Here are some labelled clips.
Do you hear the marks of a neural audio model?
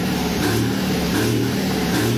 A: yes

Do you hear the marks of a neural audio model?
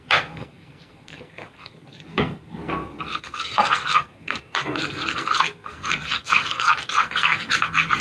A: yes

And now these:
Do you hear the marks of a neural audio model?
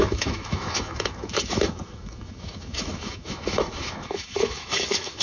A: yes